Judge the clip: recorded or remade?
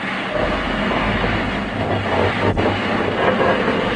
recorded